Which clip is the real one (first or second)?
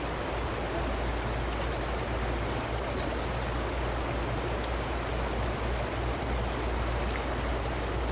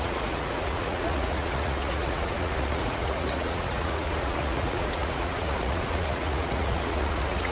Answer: first